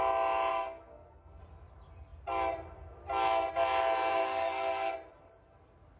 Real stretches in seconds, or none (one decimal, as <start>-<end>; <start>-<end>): 0.0-0.5; 1.4-4.1; 4.9-6.0